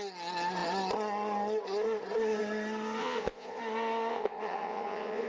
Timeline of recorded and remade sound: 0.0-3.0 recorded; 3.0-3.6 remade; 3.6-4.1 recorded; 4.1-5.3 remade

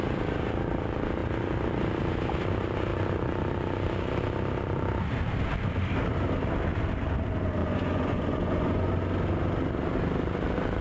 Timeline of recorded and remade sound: 0.0-7.6 recorded; 7.6-8.9 remade; 8.9-10.8 recorded

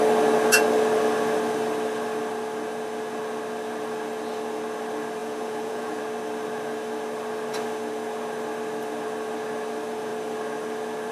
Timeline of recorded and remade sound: 0.0-5.2 recorded; 5.2-6.0 remade; 6.0-11.1 recorded